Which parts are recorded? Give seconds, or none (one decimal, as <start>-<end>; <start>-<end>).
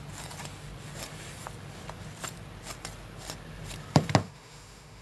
0.0-4.2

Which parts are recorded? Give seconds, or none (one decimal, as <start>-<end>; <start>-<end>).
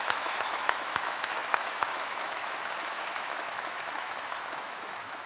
none